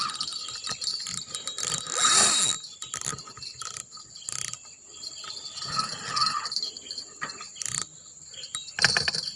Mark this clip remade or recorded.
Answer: recorded